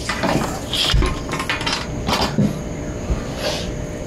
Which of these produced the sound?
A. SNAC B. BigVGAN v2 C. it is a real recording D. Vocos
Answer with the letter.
C